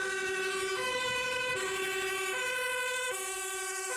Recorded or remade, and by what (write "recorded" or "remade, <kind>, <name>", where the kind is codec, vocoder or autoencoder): remade, autoencoder, DAC-VAE